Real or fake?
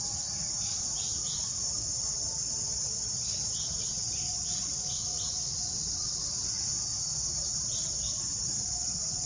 fake